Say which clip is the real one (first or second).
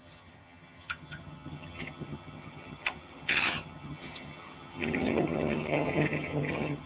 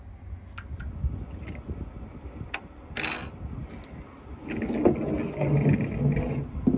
second